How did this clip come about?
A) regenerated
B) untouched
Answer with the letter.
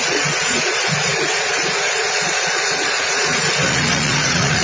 A